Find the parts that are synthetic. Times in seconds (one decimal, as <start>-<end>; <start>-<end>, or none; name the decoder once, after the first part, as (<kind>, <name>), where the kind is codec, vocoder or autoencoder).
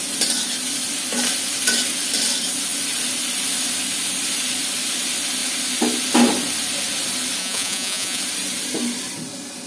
7.4-8.2 (vocoder, Vocos)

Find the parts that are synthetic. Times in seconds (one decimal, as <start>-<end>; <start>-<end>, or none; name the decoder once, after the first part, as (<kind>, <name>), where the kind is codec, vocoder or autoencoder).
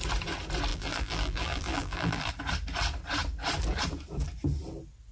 0.7-2.3 (vocoder, BigVGAN v2)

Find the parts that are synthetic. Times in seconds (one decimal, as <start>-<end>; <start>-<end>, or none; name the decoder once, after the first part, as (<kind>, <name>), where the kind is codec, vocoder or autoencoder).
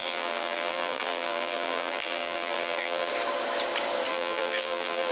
0.0-3.1 (vocoder, BigVGAN v2); 4.1-5.1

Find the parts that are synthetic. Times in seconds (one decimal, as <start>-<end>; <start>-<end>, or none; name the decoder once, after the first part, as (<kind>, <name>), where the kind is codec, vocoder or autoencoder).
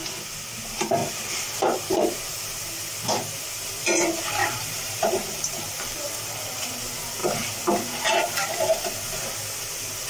1.0-2.4 (vocoder, BigVGAN v2); 4.4-6.7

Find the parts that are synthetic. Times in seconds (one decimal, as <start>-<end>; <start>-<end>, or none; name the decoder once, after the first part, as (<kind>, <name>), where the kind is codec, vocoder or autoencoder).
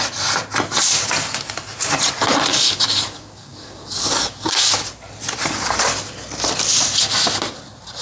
2.5-4.7 (codec, DAC)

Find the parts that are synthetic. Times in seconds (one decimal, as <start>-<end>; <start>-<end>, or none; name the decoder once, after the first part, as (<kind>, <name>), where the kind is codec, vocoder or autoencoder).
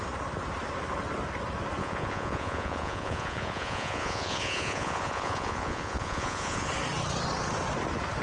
1.8-6.7 (vocoder, Vocos)